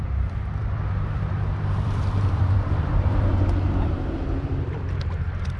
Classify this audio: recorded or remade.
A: remade